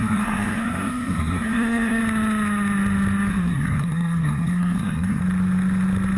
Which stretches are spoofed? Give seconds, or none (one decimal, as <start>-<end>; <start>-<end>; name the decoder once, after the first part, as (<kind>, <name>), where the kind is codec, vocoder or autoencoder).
0.0-2.0 (codec, SNAC); 3.3-5.2